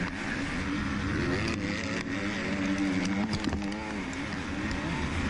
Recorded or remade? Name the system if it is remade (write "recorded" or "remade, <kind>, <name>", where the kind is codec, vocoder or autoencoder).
recorded